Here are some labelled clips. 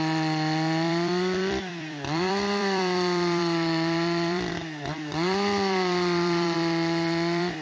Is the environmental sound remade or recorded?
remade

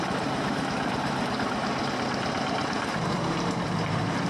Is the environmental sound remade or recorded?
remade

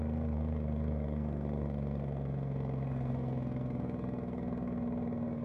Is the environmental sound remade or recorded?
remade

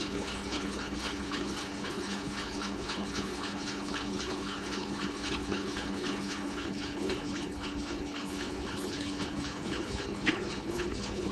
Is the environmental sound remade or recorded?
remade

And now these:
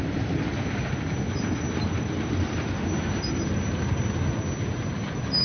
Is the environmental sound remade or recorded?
recorded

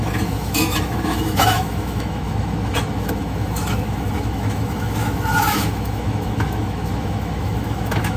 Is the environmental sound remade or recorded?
remade